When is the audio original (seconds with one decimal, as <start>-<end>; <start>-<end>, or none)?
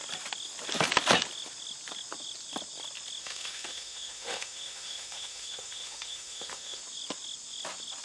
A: 0.0-3.2; 6.8-8.0